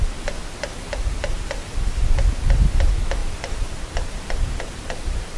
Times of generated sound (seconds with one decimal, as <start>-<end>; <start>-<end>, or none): 3.2-5.4